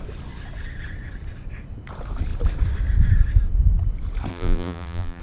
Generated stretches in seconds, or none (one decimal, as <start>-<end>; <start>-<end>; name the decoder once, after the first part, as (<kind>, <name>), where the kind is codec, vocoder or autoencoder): 4.3-5.2 (vocoder, BigVGAN v2)